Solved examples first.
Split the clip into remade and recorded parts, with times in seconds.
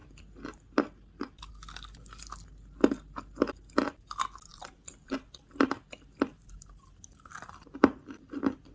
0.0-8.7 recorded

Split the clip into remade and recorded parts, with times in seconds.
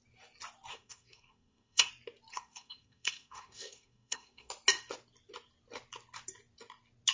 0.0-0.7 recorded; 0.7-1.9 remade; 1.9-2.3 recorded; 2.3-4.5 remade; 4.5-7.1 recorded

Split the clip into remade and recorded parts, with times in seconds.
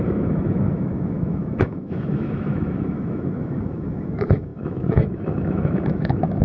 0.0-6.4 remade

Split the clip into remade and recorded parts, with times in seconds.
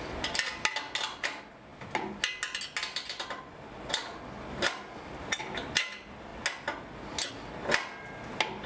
0.0-8.7 recorded